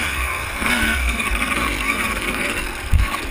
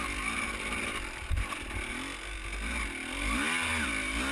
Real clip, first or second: second